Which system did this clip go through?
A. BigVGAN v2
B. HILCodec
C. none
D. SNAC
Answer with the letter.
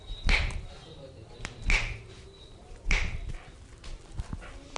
C